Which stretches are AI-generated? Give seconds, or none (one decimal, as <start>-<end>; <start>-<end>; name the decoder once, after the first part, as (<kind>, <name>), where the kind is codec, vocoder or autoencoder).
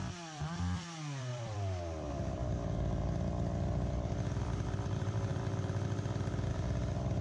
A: 0.0-5.3 (vocoder, BigVGAN v2); 6.5-7.2